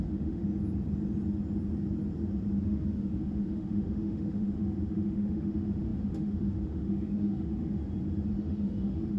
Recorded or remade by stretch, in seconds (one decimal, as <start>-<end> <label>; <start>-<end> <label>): 0.0-0.4 remade; 0.4-2.6 recorded; 2.6-7.8 remade; 7.8-8.4 recorded; 8.4-9.2 remade